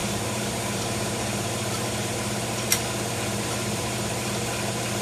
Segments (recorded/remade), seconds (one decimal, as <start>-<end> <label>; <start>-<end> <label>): 0.0-2.7 remade; 2.7-3.6 recorded; 3.6-4.3 remade; 4.3-5.0 recorded